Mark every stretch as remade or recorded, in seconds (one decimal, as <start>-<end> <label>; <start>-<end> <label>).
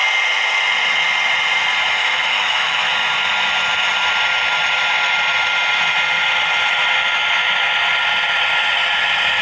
0.0-2.0 recorded; 2.0-2.9 remade; 2.9-9.4 recorded